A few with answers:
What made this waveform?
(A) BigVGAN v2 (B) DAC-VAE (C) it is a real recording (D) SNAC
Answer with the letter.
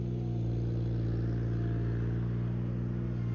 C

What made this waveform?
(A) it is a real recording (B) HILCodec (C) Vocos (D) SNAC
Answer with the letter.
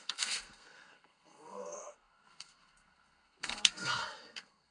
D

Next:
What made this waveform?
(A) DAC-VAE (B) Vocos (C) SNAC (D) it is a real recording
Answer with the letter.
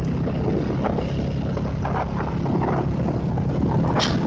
D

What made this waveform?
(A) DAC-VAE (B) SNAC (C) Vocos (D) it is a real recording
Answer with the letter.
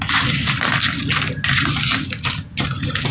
D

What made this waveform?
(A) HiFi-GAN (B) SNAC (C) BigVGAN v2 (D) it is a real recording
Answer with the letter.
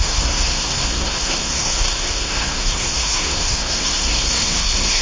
B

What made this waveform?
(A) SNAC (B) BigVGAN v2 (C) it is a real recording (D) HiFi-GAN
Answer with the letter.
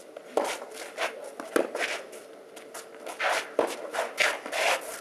C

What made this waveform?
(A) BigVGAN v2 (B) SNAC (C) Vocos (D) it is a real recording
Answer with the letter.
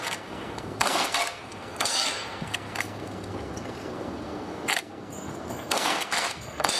B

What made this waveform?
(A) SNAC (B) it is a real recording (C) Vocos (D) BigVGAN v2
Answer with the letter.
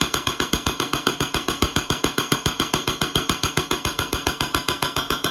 A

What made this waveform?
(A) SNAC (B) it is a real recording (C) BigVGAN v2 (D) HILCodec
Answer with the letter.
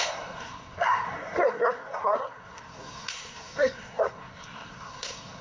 A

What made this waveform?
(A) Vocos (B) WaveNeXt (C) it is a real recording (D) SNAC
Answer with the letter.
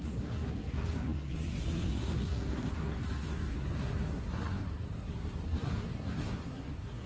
D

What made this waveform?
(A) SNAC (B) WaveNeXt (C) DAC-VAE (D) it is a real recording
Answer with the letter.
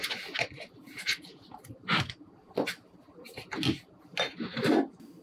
D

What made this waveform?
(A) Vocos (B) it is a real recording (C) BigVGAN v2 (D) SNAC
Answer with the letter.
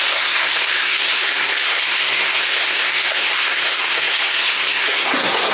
D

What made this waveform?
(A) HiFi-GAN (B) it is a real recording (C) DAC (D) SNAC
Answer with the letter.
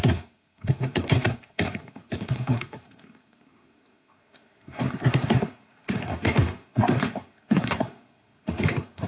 D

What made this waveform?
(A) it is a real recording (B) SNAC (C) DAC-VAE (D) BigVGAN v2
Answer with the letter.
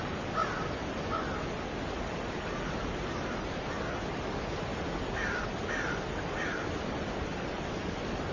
A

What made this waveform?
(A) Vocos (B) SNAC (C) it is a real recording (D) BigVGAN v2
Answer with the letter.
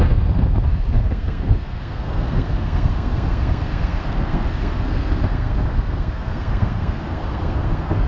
B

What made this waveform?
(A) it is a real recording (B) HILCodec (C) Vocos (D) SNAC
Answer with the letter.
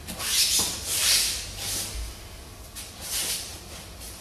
A